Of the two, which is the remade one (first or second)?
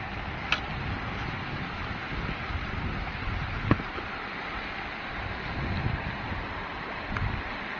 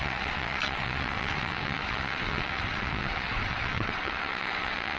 second